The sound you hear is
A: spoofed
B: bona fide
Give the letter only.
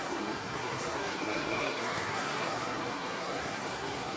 A